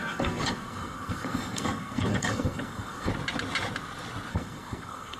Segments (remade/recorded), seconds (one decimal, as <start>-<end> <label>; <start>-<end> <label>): 0.0-3.1 remade; 3.1-4.3 recorded; 4.3-5.2 remade